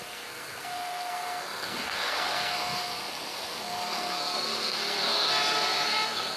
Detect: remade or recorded remade